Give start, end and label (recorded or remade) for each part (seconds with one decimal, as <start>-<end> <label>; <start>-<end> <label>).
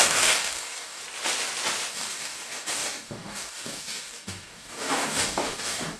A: 0.0-1.0 remade; 1.0-1.9 recorded; 1.9-6.0 remade